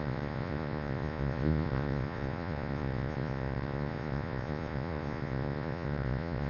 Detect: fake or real fake